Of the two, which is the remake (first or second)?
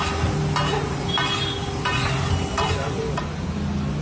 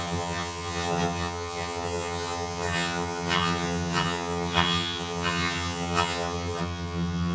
second